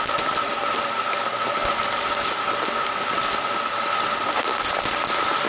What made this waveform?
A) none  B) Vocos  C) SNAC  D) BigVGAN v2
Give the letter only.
A